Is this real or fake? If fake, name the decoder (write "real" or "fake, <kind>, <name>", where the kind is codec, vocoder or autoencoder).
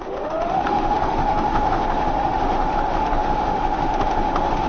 fake, autoencoder, DAC-VAE